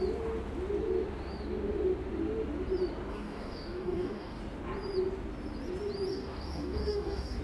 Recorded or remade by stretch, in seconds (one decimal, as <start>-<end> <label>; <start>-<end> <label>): 0.0-3.1 recorded; 3.1-4.4 remade; 4.4-6.1 recorded; 6.1-7.4 remade